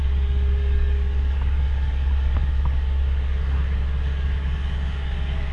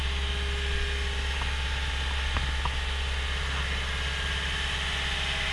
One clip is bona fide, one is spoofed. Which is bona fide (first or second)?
second